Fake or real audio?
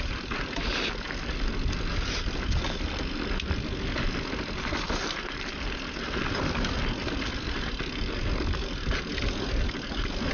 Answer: real